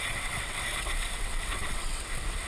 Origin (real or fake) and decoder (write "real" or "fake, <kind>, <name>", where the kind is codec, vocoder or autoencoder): fake, vocoder, WaveNeXt